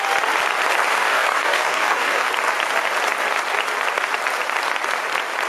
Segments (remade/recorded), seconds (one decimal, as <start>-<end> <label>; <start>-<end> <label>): 0.0-0.9 recorded; 0.9-2.3 remade; 2.3-5.5 recorded